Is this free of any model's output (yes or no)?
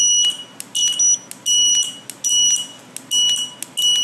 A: yes